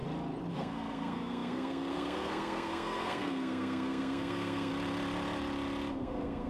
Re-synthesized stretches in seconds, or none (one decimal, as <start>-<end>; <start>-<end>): 0.5-4.7; 5.9-6.5